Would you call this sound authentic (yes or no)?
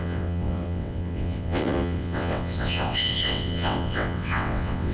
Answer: no